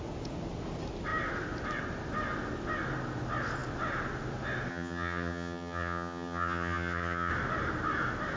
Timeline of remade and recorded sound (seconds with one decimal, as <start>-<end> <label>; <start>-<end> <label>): 0.0-4.7 recorded; 4.7-7.3 remade; 7.3-8.4 recorded